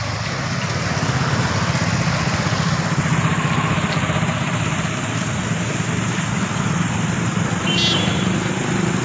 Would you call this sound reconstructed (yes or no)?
no